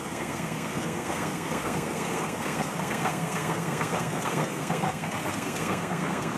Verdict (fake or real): fake